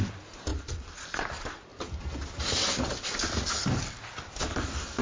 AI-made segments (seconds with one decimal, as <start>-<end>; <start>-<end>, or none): 0.5-1.0; 1.7-5.0